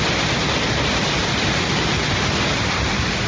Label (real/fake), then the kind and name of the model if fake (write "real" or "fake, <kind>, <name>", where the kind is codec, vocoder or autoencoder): real